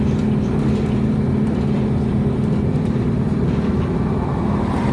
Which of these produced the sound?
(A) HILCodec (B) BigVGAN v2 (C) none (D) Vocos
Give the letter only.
B